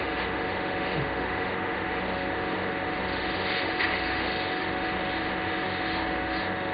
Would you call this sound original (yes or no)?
no